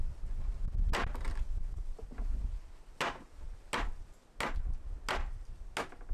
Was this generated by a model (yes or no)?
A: no